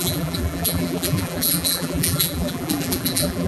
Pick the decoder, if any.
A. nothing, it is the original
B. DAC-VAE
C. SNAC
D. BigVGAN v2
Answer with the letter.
D